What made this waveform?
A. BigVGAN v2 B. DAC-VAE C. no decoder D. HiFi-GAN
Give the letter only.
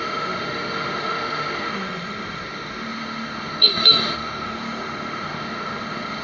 B